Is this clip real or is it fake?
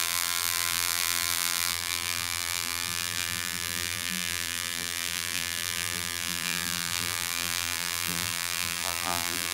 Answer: fake